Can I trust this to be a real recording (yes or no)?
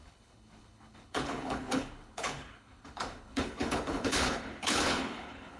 no